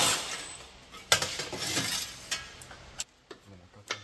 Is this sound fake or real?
real